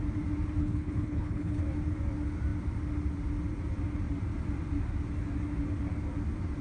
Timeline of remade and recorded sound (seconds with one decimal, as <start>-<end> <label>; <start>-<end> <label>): 0.0-0.6 recorded; 0.6-1.6 remade; 1.6-6.6 recorded